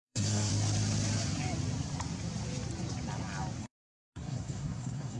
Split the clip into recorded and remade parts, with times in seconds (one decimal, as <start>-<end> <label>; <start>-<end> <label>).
0.0-0.5 remade; 0.5-3.6 recorded; 3.6-5.2 remade